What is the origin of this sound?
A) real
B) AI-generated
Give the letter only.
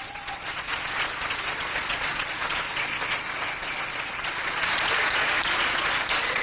B